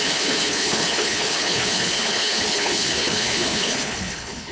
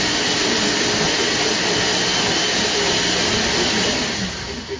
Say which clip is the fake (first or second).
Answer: first